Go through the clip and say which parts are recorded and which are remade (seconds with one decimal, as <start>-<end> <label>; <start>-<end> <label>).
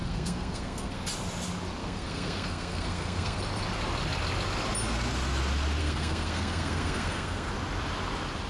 0.0-1.0 remade; 1.0-1.8 recorded; 1.8-3.4 remade; 3.4-5.8 recorded; 5.8-7.5 remade; 7.5-8.5 recorded